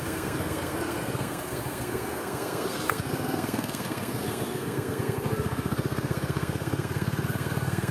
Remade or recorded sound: remade